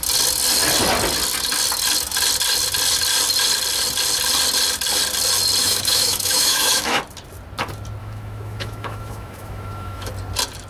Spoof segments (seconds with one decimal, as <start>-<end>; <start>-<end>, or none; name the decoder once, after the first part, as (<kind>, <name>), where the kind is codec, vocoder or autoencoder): 5.6-7.0 (autoencoder, DAC-VAE); 8.0-10.1